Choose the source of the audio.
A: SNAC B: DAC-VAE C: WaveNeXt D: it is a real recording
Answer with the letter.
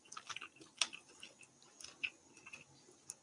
D